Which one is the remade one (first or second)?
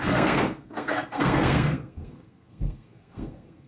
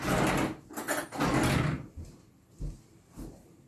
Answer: first